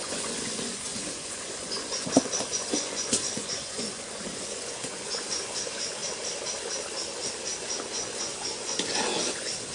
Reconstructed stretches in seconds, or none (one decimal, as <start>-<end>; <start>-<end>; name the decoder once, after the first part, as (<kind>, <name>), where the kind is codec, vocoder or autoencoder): 0.0-6.0 (vocoder, Vocos); 7.9-9.7